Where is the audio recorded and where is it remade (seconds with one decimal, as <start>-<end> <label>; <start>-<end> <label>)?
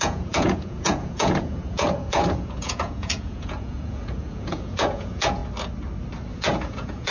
0.0-5.4 remade; 5.4-6.3 recorded; 6.3-7.1 remade